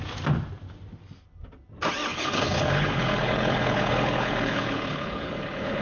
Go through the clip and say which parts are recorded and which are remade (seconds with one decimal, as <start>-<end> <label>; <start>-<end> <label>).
0.0-2.1 recorded; 2.1-5.8 remade